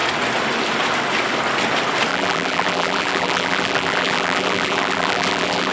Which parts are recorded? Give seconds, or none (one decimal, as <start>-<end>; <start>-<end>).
0.0-2.1